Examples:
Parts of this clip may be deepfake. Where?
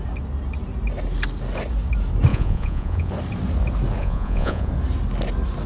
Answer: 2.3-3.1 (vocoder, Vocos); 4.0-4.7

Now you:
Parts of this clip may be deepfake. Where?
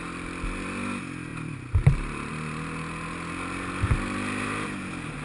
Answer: 1.3-2.3 (vocoder, BigVGAN v2)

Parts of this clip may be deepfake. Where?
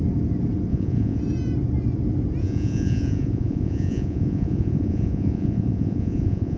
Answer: 0.7-1.2 (vocoder, Vocos); 2.4-6.6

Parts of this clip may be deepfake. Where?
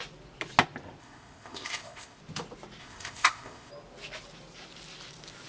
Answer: 1.0-2.2 (codec, ZipCodec); 2.8-3.7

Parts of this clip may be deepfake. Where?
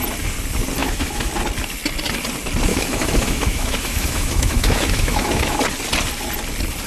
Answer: 0.8-1.3 (autoencoder, DAC-VAE); 2.7-5.6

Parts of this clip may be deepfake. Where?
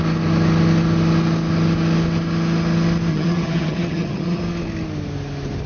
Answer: 3.1-4.4 (vocoder, HiFi-GAN)